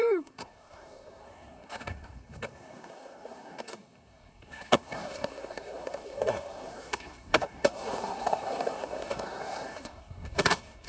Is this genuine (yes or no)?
no